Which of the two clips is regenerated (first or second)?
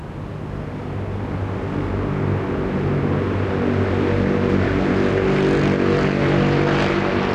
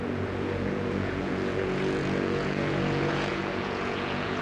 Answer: second